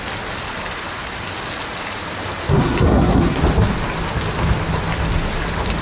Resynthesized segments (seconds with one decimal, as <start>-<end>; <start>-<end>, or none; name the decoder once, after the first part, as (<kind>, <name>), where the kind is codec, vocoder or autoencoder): 2.4-3.4 (codec, SNAC)

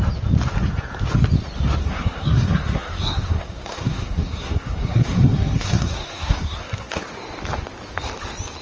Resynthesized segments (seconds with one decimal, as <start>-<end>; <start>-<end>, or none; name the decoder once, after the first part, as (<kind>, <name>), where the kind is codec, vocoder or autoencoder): 1.8-7.0 (codec, SNAC)

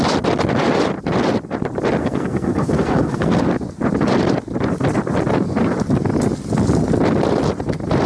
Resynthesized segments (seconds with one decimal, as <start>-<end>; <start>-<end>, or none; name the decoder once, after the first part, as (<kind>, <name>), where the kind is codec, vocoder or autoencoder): 2.0-3.4 (codec, SNAC)

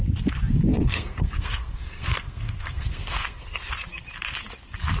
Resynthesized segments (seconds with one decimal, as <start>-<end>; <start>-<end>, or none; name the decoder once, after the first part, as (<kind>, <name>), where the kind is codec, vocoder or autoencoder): 0.7-3.7 (codec, SNAC)